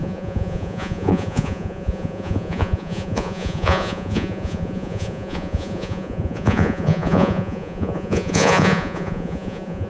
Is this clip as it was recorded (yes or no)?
no